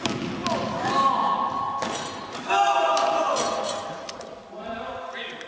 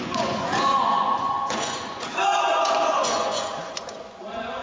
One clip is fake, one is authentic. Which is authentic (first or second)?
first